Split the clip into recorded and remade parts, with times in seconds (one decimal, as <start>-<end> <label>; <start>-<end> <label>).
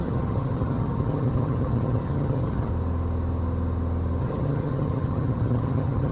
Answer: 0.0-2.7 remade; 2.7-4.2 recorded; 4.2-6.1 remade